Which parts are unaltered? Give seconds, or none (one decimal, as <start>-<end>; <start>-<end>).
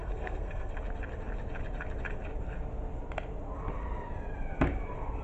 0.7-5.2